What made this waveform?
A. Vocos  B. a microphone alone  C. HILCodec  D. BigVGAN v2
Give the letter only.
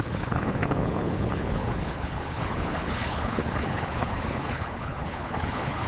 C